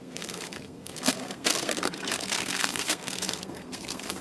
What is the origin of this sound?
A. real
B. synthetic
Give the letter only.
B